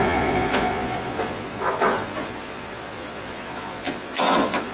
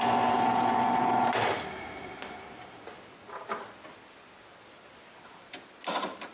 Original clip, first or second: second